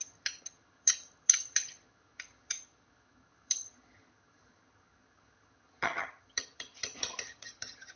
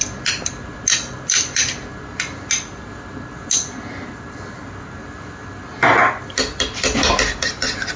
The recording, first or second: second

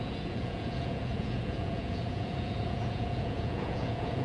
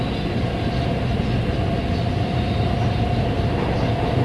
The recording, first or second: second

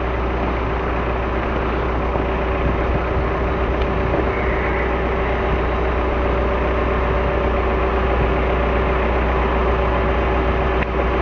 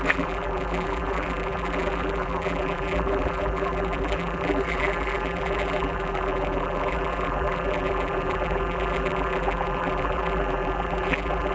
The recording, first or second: first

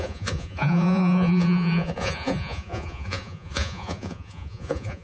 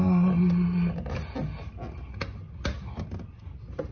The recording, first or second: second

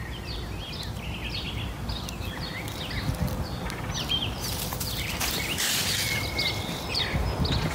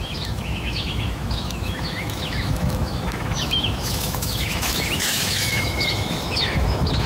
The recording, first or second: first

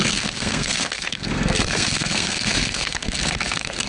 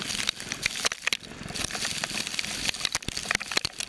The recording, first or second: second